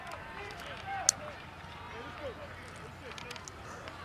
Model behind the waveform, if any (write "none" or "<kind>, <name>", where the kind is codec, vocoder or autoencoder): none